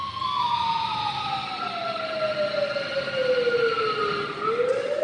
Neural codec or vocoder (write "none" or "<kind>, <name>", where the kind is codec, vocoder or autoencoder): none